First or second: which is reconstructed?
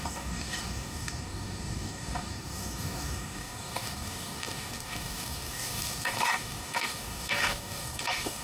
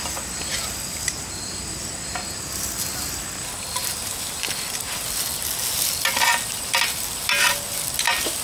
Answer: first